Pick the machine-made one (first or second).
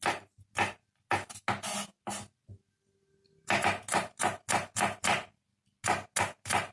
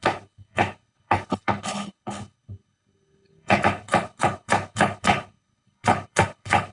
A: second